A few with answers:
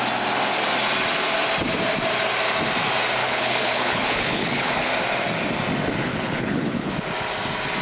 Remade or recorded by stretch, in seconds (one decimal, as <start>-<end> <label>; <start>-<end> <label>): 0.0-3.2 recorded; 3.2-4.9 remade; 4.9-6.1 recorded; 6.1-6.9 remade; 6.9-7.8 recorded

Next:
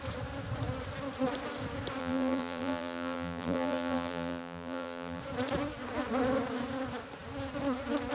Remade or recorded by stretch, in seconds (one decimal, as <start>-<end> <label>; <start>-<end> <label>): 0.0-2.0 recorded; 2.0-5.2 remade; 5.2-8.1 recorded

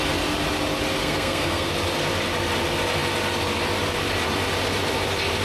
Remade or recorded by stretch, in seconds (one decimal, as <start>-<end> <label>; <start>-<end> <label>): 0.0-1.0 recorded; 1.0-1.7 remade; 1.7-5.4 recorded